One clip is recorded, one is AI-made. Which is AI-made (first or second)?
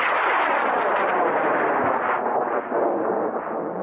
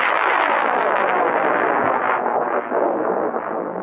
second